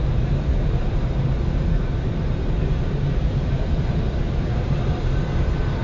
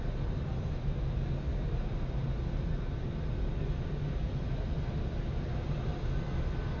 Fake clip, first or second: first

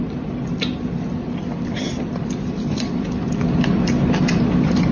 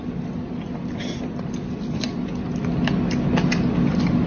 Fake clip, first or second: first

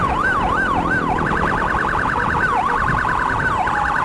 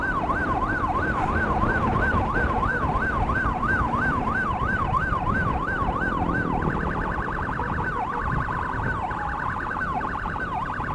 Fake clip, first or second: second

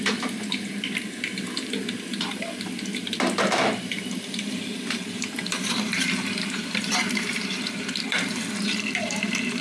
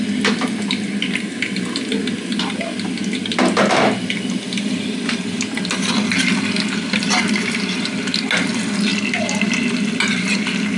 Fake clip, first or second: first